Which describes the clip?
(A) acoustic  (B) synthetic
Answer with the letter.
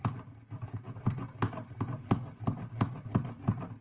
A